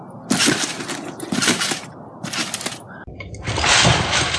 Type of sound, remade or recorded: recorded